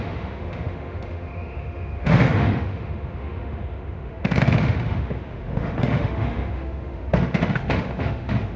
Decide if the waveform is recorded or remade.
remade